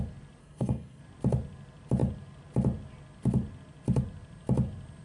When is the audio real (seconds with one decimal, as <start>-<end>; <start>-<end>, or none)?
0.0-0.4; 1.0-5.0